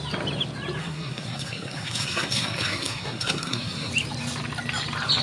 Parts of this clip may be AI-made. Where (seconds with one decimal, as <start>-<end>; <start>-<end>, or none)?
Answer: 0.8-3.9